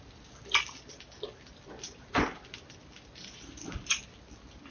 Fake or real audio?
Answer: real